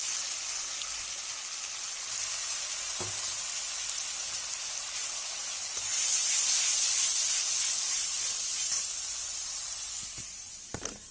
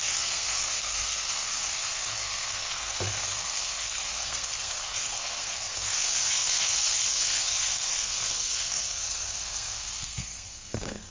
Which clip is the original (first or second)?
first